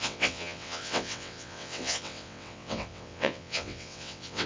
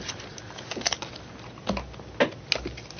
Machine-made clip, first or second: first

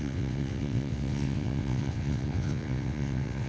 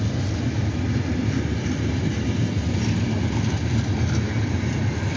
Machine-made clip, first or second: first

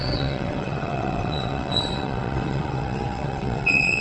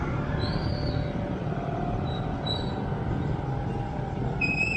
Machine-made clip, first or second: first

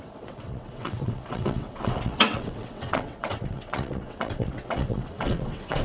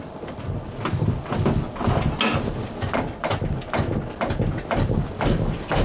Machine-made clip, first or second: first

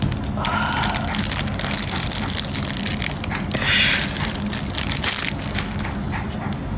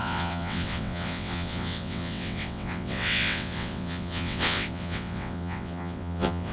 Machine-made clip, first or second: second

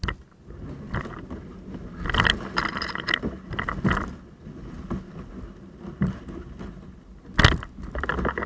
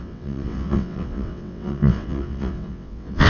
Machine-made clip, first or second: second